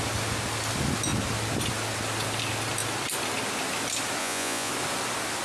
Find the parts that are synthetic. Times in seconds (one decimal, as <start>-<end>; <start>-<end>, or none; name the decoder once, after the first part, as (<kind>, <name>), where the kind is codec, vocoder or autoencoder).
4.2-4.7 (vocoder, Vocos)